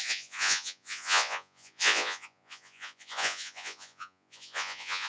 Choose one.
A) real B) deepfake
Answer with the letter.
B